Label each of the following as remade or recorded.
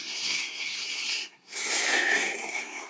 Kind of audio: remade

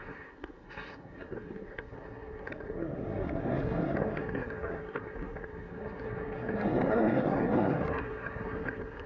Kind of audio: remade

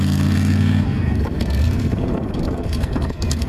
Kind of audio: remade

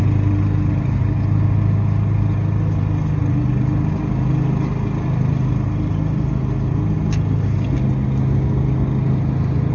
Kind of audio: recorded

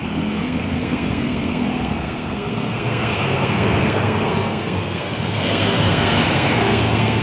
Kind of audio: remade